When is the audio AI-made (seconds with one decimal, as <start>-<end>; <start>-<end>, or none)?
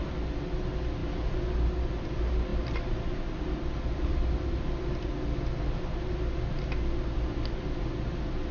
none